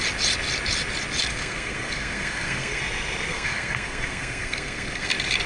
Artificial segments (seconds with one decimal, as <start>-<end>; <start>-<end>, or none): 1.3-2.8; 3.3-5.1